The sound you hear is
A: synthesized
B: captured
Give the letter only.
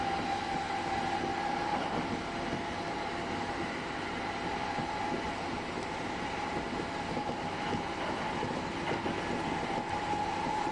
B